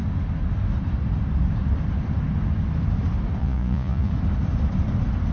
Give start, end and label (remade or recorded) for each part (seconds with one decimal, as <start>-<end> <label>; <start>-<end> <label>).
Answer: 0.0-3.4 recorded; 3.4-4.1 remade; 4.1-5.3 recorded